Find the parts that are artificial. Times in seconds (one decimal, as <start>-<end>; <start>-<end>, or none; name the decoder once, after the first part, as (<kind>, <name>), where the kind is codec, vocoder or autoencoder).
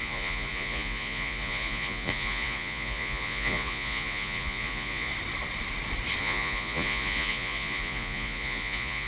0.0-5.1 (vocoder, Vocos); 6.2-9.1